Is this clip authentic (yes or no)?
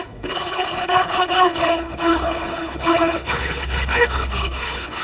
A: no